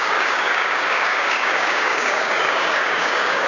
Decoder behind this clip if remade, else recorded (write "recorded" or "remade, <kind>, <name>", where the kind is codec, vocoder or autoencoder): remade, codec, DAC